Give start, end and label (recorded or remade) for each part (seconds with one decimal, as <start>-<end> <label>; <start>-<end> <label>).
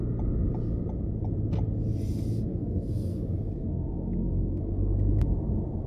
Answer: 0.0-2.5 recorded; 2.5-3.2 remade; 3.2-3.6 recorded; 3.6-4.6 remade; 4.6-5.9 recorded